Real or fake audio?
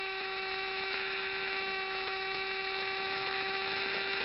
fake